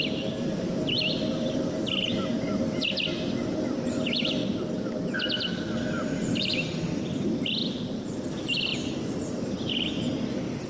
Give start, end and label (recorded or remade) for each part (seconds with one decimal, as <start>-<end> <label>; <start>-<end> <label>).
0.0-4.4 remade; 4.4-5.9 recorded; 5.9-8.7 remade; 8.7-9.7 recorded; 9.7-10.7 remade